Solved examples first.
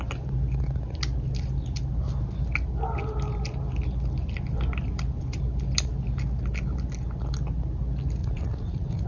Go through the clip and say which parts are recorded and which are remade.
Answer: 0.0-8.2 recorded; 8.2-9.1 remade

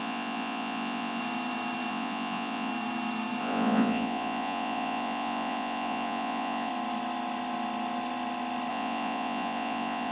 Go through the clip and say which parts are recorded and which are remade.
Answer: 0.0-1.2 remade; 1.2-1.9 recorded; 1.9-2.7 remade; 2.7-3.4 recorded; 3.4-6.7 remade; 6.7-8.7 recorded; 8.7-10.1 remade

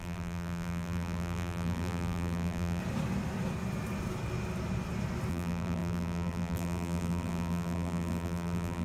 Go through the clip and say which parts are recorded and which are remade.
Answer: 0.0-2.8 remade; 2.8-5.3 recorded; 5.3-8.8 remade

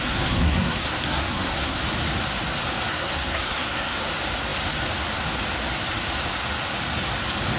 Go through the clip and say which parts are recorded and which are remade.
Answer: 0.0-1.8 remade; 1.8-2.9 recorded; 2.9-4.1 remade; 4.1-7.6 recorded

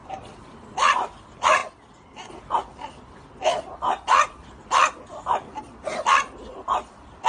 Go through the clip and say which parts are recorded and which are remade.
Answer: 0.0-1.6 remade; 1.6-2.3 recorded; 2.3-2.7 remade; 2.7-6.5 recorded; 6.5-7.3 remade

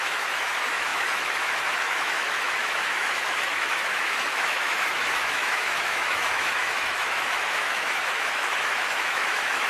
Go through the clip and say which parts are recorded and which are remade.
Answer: 0.0-9.7 remade

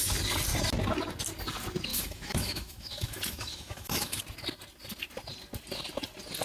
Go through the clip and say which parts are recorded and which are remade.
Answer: 0.0-1.9 recorded; 1.9-4.2 remade; 4.2-6.4 recorded